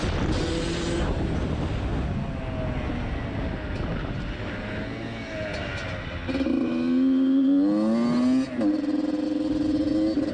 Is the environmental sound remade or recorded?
recorded